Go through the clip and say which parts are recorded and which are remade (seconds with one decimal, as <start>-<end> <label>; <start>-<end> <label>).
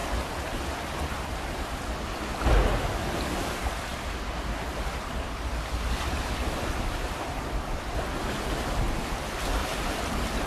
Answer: 0.0-2.2 remade; 2.2-9.6 recorded; 9.6-10.1 remade; 10.1-10.5 recorded